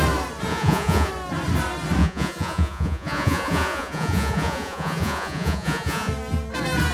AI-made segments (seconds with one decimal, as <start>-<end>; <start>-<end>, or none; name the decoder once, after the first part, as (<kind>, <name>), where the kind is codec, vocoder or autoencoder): 0.5-1.1 (vocoder, Vocos); 2.0-6.1